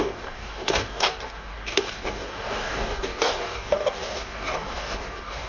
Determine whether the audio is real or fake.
fake